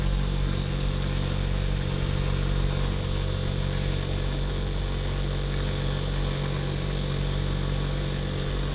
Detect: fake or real real